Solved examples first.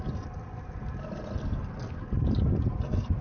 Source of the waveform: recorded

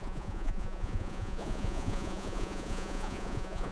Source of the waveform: remade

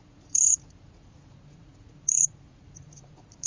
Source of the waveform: remade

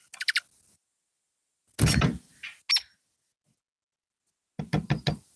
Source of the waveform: recorded